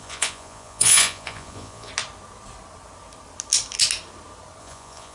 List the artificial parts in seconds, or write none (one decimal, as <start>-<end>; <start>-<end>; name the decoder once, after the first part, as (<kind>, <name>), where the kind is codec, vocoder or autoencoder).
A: 0.0-1.9 (vocoder, Vocos); 4.6-5.1